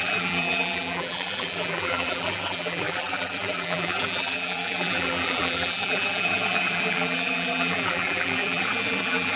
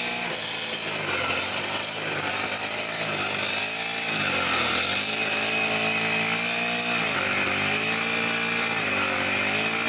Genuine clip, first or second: second